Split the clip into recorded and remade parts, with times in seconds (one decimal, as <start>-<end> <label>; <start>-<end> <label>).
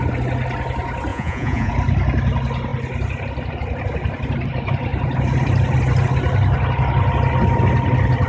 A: 0.0-1.1 recorded; 1.1-1.7 remade; 1.7-8.3 recorded